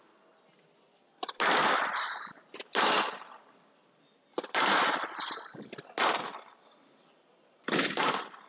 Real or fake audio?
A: real